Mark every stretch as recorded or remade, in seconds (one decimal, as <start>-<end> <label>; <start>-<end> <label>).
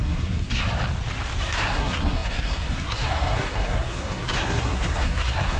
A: 0.0-0.6 remade; 0.6-1.4 recorded; 1.4-5.6 remade